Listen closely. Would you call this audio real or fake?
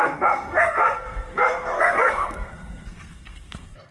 fake